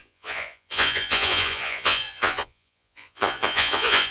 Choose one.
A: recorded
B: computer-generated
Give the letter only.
B